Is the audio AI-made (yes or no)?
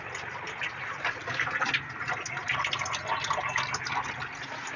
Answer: no